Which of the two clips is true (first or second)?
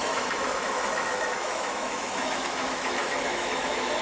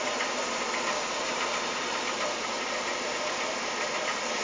second